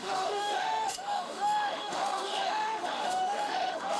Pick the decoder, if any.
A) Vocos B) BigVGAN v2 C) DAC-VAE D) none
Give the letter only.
C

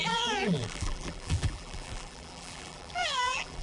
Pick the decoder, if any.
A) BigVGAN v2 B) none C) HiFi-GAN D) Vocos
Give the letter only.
A